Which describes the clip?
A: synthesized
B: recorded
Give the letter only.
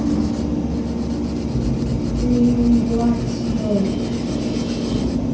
B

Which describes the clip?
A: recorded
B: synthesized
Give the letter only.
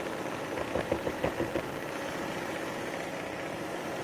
A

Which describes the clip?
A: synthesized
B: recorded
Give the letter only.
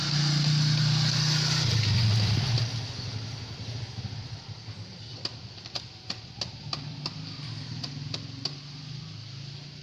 B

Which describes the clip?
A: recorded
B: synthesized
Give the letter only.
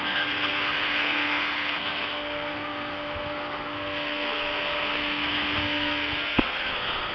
B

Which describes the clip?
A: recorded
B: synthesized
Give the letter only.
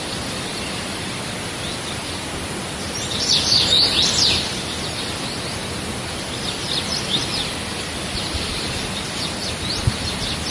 A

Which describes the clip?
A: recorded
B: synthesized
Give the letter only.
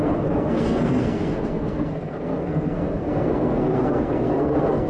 B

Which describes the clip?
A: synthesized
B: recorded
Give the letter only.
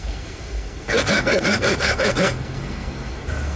A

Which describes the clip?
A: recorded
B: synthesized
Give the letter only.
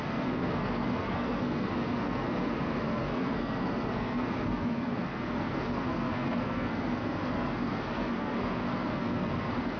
B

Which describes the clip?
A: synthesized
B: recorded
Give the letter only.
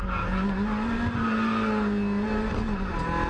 B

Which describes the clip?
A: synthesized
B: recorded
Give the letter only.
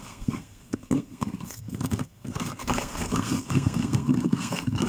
A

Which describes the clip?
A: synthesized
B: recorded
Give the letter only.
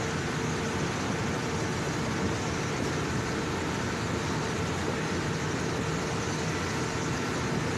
B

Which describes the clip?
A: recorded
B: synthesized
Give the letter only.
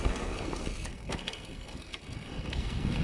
B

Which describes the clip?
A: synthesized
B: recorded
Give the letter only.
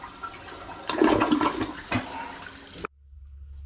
B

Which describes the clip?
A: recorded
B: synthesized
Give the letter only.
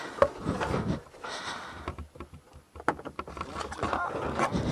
A